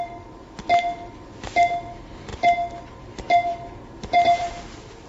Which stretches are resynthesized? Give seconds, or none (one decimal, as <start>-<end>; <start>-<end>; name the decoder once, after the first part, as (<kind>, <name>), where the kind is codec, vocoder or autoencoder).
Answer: 2.3-3.0 (vocoder, BigVGAN v2); 3.5-4.5